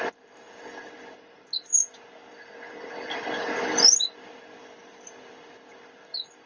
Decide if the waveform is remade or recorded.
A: recorded